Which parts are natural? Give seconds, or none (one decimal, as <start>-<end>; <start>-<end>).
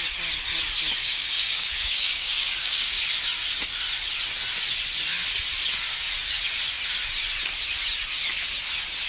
0.0-1.0; 3.0-9.1